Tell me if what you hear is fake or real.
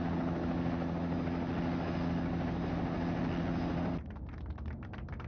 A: real